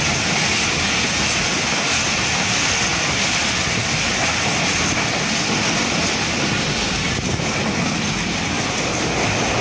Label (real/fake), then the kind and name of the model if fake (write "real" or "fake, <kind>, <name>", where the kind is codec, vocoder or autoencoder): real